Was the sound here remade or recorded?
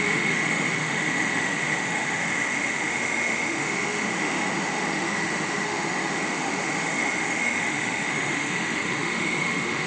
remade